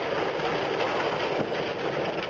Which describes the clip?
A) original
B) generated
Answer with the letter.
A